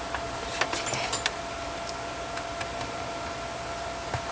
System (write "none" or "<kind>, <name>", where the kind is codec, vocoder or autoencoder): none